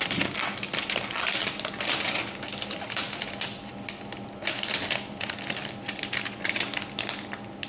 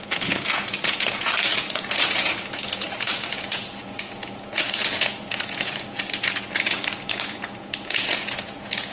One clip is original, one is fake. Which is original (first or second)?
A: first